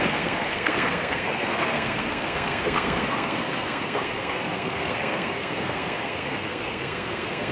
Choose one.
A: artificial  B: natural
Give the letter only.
A